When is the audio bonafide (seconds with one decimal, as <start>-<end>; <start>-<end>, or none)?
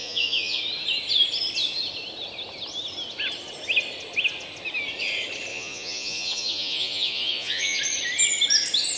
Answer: 0.6-5.5; 7.8-9.0